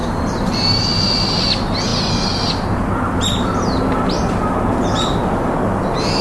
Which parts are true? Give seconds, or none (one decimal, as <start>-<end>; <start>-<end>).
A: 0.8-6.2